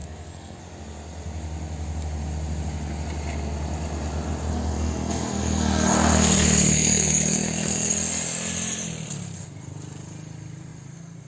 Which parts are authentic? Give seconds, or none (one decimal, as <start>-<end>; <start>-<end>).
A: 0.6-4.5; 7.9-11.3